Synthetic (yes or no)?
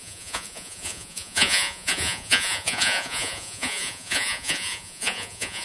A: yes